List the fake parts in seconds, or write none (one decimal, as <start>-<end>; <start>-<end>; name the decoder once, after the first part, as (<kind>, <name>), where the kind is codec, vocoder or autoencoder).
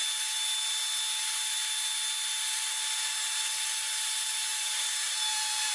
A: 4.5-5.7 (vocoder, BigVGAN v2)